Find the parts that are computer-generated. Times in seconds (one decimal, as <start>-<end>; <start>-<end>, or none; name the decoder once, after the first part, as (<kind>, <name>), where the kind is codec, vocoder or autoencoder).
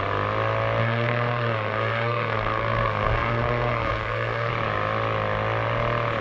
0.8-4.5 (codec, SNAC)